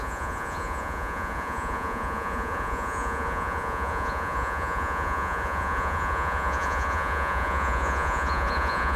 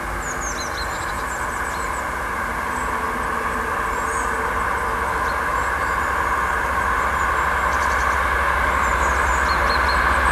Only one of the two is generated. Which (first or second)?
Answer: first